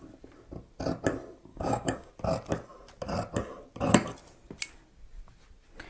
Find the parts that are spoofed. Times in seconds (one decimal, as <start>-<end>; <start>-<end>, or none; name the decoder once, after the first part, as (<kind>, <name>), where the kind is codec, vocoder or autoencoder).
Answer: 1.5-2.1 (codec, DAC)